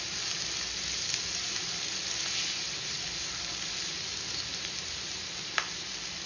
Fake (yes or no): no